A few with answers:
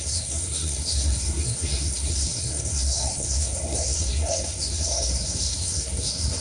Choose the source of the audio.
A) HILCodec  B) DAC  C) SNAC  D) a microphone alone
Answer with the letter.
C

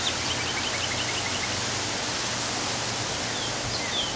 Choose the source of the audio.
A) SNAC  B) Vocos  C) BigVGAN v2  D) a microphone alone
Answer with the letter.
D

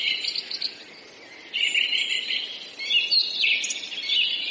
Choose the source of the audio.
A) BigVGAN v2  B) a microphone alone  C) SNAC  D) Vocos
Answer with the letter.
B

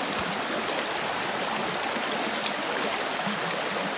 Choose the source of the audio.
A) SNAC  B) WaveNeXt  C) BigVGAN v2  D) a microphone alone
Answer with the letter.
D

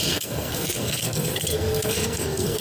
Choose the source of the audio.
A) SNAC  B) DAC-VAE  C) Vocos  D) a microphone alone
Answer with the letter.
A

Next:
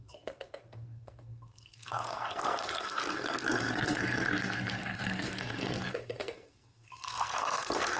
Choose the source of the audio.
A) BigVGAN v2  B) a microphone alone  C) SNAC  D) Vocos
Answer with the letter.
C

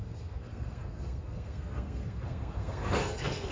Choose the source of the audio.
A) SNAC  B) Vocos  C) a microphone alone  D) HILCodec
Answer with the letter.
A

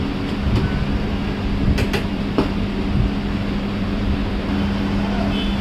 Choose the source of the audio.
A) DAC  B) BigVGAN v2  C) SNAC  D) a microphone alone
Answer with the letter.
D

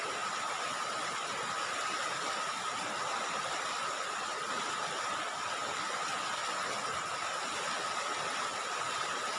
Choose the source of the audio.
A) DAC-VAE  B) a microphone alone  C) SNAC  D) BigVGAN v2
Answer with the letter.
B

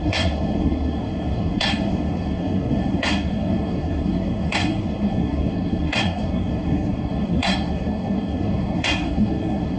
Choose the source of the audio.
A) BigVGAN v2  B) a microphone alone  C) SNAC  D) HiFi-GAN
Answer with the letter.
C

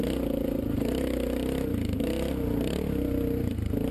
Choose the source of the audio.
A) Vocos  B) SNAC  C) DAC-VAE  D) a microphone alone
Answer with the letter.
D